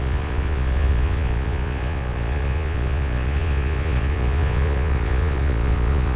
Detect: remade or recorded remade